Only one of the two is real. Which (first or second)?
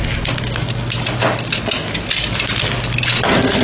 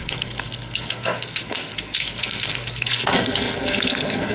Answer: first